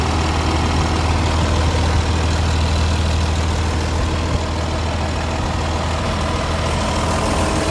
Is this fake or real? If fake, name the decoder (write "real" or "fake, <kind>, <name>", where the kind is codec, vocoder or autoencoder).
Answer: real